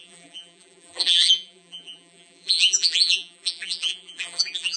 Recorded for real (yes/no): no